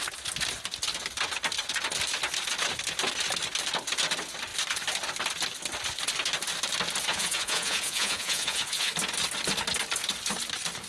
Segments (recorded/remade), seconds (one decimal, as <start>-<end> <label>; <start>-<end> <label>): 0.0-7.1 recorded; 7.1-8.9 remade; 8.9-10.9 recorded